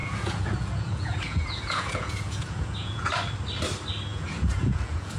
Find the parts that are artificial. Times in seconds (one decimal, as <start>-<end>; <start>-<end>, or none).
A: 0.0-3.1; 4.1-5.2